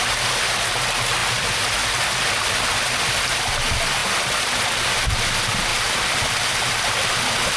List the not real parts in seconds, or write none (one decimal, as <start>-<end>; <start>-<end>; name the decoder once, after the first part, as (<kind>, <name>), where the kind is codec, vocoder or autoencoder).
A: 1.2-3.2 (vocoder, BigVGAN v2); 5.7-6.3